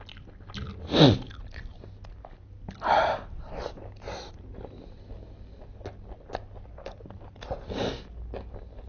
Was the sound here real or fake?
real